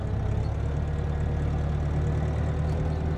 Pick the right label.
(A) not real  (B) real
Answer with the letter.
B